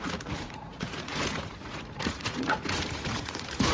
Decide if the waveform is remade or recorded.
remade